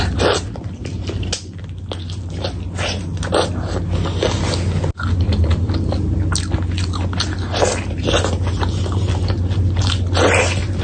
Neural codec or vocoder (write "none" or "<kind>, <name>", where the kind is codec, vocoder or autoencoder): none